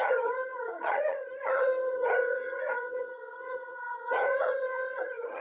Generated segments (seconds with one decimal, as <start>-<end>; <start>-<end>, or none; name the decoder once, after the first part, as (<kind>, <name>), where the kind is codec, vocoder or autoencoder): 0.0-5.4 (vocoder, HiFi-GAN)